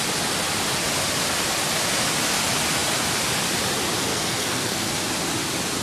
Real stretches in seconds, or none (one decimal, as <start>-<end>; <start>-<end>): 0.0-4.1; 4.9-5.8